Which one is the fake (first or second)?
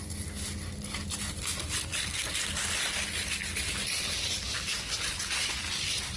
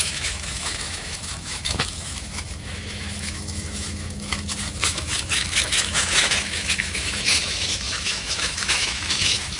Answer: second